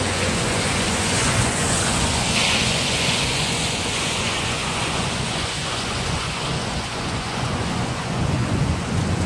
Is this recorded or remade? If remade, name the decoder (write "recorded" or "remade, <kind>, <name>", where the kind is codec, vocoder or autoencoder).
remade, vocoder, Vocos